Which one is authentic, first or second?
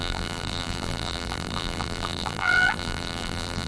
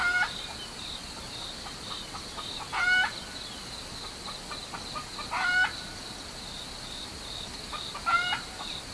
second